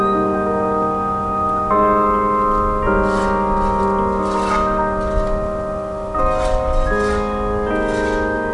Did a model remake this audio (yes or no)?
no